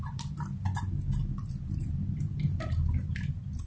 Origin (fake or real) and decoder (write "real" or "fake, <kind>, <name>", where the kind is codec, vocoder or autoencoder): real